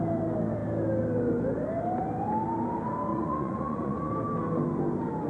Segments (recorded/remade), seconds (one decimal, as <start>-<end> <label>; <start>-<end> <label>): 0.0-3.1 recorded; 3.1-4.1 remade; 4.1-5.3 recorded